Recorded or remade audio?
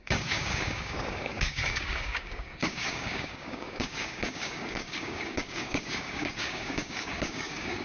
remade